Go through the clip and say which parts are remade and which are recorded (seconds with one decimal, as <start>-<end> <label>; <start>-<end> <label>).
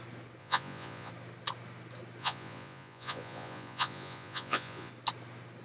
0.0-0.4 recorded; 0.4-1.1 remade; 1.1-2.2 recorded; 2.2-4.9 remade; 4.9-5.6 recorded